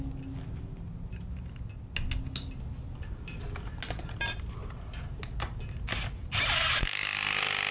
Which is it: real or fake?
real